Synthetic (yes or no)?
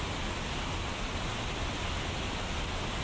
no